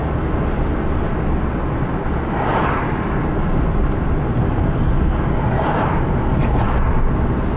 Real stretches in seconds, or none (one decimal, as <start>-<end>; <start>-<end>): 0.0-7.6